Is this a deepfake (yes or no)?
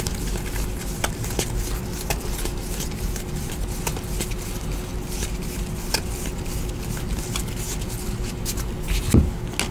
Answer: no